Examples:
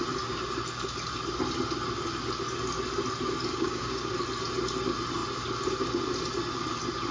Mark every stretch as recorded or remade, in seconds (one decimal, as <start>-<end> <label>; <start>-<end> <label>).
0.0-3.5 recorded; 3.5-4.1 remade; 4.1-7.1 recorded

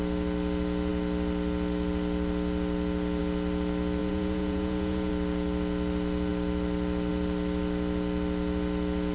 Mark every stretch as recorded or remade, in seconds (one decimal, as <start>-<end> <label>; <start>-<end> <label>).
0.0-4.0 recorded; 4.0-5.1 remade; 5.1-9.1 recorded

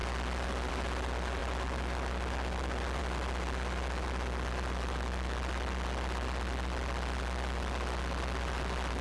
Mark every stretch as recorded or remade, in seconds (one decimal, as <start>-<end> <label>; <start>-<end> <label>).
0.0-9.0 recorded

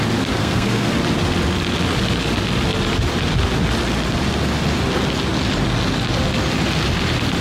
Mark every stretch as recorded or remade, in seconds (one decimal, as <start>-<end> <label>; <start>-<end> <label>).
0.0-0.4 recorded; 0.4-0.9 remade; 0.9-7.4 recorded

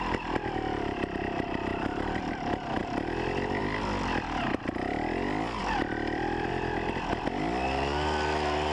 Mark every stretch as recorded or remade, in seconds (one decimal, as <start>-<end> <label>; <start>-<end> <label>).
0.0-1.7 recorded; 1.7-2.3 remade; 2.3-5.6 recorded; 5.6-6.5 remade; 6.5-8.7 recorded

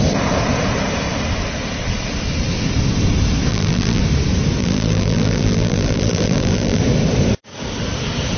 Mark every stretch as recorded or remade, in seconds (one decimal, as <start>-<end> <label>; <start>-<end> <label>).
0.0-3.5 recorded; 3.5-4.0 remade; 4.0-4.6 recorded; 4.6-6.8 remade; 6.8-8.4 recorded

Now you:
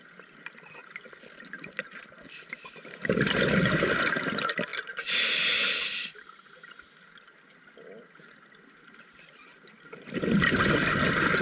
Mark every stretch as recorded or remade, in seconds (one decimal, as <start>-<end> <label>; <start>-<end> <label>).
0.0-11.4 recorded

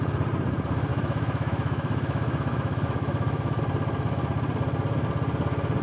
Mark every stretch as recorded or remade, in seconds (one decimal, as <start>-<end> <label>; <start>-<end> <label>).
0.0-0.9 recorded; 0.9-3.6 remade; 3.6-5.8 recorded